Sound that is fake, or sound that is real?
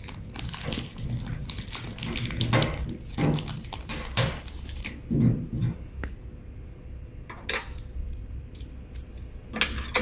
real